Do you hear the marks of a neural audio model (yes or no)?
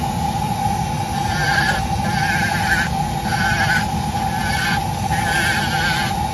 no